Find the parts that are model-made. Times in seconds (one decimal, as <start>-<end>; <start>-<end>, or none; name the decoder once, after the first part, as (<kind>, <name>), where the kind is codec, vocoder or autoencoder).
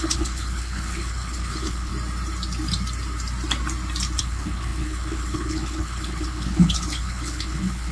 0.0-1.9 (codec, HILCodec); 4.2-7.9